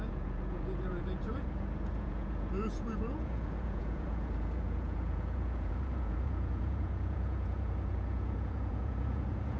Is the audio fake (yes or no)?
yes